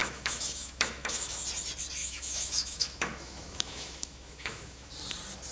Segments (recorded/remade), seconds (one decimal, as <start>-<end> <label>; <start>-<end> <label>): 0.0-1.4 remade; 1.4-2.0 recorded; 2.0-4.9 remade; 4.9-5.5 recorded